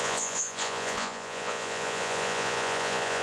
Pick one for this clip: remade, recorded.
remade